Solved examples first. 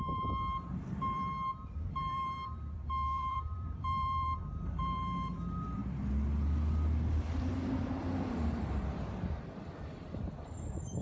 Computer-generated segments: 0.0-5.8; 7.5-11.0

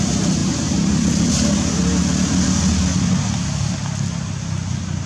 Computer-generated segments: 0.0-1.8

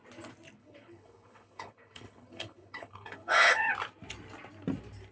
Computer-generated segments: 0.6-3.7

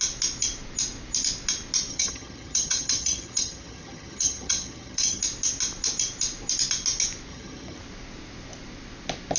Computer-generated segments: 1.9-5.2; 7.3-7.8